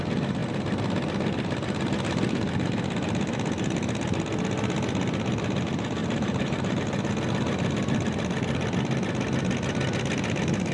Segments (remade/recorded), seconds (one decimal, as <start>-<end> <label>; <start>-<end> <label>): 0.0-6.0 recorded; 6.0-6.8 remade; 6.8-10.7 recorded